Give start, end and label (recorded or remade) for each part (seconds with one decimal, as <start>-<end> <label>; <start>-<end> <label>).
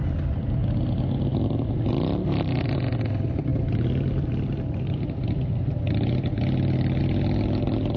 0.0-8.0 recorded